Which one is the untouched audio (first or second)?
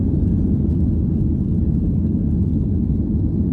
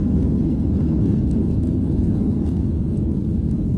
first